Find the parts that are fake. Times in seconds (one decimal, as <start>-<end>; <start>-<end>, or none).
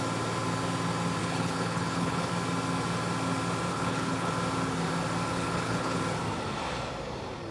1.2-2.3; 3.7-4.3; 5.3-6.0